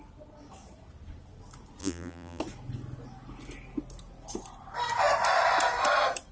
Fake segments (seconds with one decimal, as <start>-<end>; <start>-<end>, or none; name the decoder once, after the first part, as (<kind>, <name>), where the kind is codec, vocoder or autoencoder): 1.8-2.4 (vocoder, BigVGAN v2)